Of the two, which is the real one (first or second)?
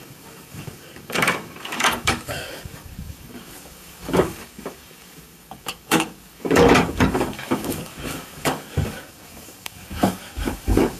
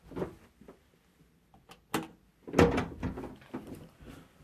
second